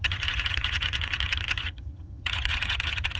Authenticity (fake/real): fake